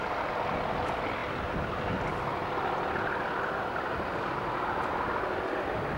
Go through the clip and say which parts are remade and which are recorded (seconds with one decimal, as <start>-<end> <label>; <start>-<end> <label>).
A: 0.0-6.0 recorded